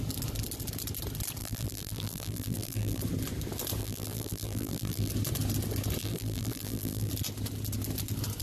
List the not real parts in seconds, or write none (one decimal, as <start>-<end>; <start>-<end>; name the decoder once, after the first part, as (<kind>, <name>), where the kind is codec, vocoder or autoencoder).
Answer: 1.4-3.0 (vocoder, BigVGAN v2); 3.8-5.1; 6.0-7.1